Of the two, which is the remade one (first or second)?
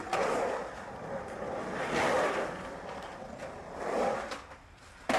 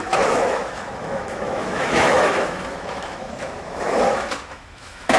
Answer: second